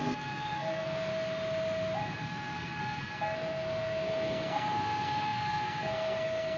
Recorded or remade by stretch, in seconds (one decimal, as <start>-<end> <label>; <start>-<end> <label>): 0.0-1.1 remade; 1.1-2.2 recorded; 2.2-6.6 remade